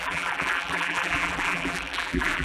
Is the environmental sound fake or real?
fake